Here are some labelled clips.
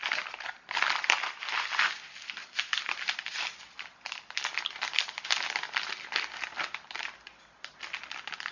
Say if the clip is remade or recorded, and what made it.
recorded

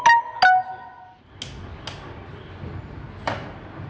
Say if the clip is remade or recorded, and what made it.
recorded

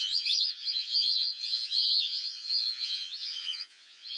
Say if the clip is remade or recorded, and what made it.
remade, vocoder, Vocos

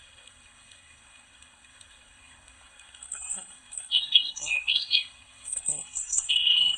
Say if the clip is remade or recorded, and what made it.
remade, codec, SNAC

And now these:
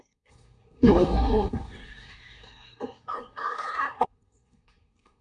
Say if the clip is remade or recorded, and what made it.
remade, codec, SNAC